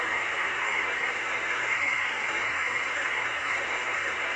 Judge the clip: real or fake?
fake